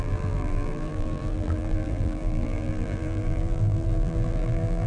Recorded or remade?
remade